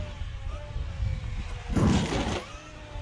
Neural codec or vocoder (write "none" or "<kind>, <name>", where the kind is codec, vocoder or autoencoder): none